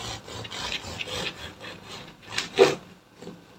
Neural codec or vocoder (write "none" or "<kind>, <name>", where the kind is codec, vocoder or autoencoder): none